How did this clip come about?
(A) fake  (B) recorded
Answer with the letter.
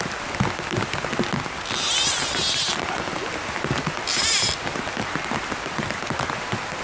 B